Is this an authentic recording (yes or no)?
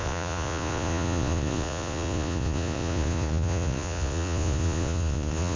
no